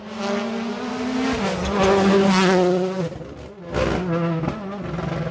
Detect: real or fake real